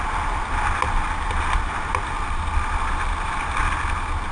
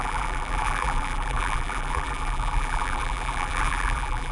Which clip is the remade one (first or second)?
second